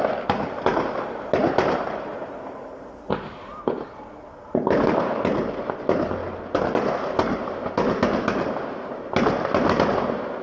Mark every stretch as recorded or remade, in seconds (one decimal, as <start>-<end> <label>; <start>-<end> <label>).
0.0-10.4 recorded